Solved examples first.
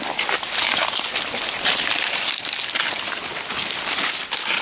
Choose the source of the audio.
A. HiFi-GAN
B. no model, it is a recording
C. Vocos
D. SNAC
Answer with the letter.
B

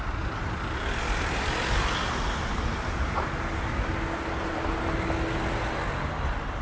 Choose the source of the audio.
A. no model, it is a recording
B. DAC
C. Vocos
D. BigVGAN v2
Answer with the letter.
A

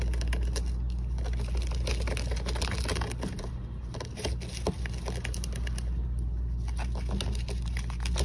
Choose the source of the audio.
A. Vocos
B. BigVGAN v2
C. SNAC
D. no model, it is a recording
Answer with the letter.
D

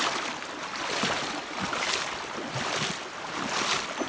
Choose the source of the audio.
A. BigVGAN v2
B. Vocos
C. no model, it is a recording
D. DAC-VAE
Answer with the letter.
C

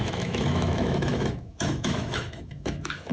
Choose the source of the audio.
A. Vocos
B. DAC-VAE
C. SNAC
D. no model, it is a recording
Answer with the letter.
B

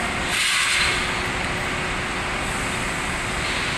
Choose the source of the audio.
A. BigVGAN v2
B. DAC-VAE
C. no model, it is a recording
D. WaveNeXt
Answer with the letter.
C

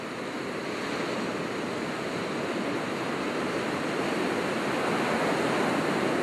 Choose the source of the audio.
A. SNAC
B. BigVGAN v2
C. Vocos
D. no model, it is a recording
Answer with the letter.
D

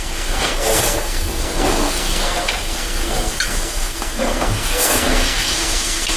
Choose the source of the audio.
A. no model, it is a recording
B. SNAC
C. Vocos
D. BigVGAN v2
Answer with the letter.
B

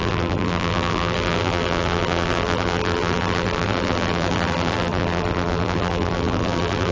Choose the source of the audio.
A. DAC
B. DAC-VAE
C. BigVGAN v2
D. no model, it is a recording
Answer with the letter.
C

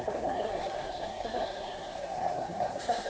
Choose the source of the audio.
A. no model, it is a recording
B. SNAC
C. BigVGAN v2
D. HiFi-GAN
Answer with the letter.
B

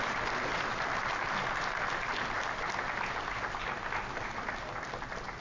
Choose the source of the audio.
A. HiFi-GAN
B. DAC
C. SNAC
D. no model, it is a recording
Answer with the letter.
D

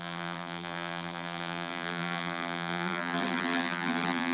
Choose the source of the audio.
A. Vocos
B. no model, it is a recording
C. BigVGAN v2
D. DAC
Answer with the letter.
C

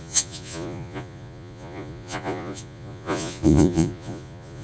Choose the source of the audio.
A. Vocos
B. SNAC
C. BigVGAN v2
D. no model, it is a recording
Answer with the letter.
A